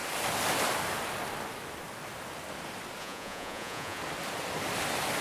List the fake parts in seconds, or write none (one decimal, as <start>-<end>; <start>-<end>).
3.0-4.0